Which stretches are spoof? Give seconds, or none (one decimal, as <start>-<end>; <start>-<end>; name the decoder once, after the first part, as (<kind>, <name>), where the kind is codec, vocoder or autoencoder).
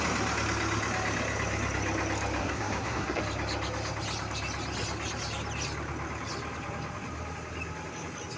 2.4-3.2 (codec, SNAC)